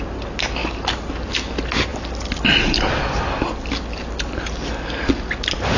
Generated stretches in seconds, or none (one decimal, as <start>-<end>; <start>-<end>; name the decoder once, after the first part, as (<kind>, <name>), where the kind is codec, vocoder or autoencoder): none